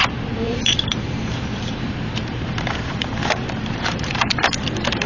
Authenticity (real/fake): fake